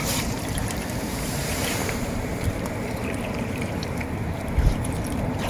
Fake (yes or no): yes